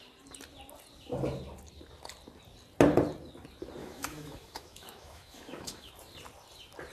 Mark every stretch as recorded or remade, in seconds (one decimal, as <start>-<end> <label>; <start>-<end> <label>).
0.0-3.8 recorded; 3.8-5.9 remade; 5.9-6.9 recorded